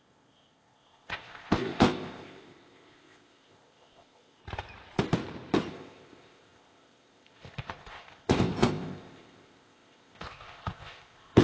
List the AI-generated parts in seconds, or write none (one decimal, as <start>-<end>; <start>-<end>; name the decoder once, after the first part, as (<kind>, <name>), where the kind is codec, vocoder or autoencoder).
0.0-4.4 (codec, ZipCodec); 5.7-11.4